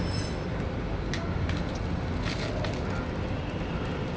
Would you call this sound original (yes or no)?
yes